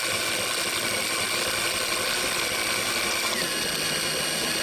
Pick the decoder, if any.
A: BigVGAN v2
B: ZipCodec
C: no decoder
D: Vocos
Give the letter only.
C